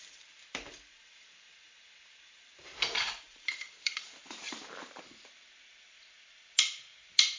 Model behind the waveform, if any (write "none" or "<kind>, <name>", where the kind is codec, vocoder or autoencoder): vocoder, BigVGAN v2